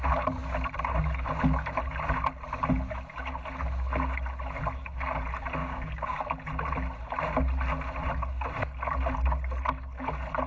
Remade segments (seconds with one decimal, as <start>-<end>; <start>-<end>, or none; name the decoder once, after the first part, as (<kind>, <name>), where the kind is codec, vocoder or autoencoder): 5.6-6.2 (codec, DAC)